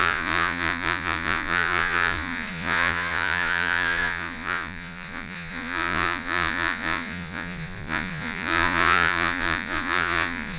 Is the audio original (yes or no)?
no